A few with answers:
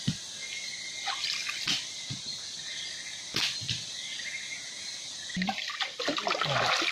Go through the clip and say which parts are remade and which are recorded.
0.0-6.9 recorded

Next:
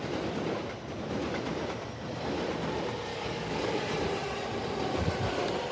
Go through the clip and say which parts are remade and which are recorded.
0.0-3.1 recorded; 3.1-3.9 remade; 3.9-5.7 recorded

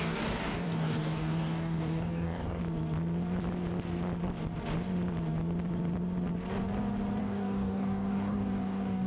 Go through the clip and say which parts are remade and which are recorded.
0.0-2.6 remade; 2.6-7.2 recorded; 7.2-9.1 remade

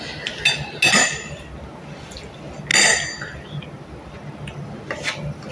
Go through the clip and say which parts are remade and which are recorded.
0.0-5.5 recorded

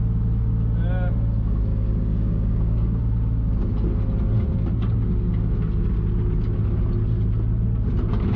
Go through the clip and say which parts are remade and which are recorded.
0.0-1.7 recorded; 1.7-3.0 remade; 3.0-8.4 recorded

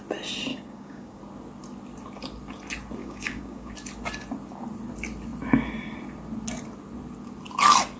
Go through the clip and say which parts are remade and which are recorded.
0.0-0.5 recorded; 0.5-1.2 remade; 1.2-3.0 recorded; 3.0-3.7 remade; 3.7-8.0 recorded

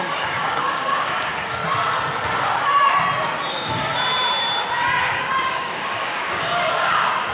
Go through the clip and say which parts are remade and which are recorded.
0.0-1.6 remade; 1.6-3.5 recorded; 3.5-3.9 remade; 3.9-5.2 recorded; 5.2-7.3 remade